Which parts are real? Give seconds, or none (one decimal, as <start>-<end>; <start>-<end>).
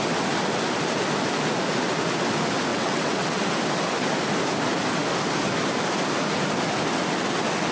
0.0-2.7; 3.4-7.7